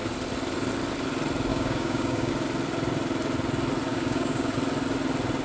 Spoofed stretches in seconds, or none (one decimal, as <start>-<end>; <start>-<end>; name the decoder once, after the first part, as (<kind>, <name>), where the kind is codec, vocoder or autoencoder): 1.5-2.3 (codec, DAC); 3.9-4.5